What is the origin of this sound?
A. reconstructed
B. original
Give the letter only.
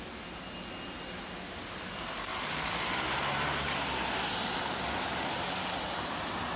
B